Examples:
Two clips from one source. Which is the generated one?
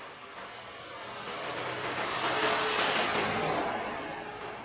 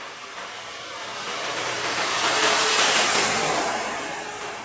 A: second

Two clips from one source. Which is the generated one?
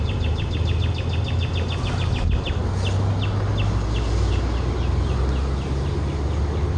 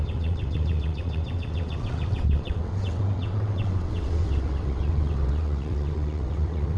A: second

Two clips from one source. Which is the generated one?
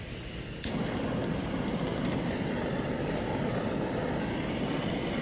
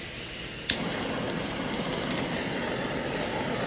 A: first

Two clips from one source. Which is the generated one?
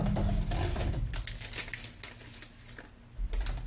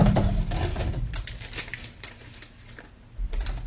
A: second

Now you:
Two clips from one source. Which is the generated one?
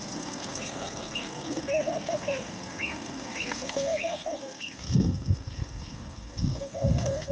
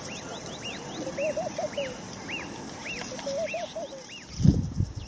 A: first